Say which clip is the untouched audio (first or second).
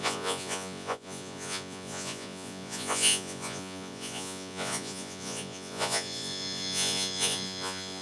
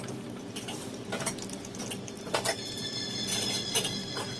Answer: second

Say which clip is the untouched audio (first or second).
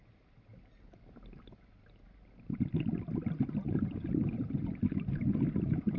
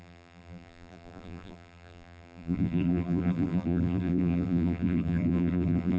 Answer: first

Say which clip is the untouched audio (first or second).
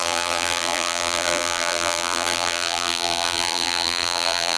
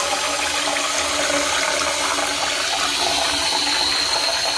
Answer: second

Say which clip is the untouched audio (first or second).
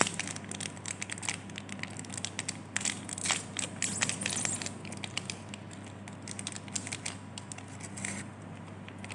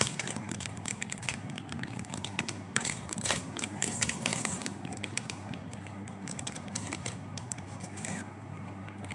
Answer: first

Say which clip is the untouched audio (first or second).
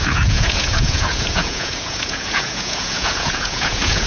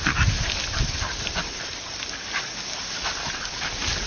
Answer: second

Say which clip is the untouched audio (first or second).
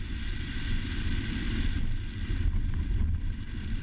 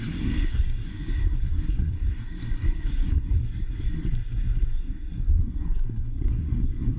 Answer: first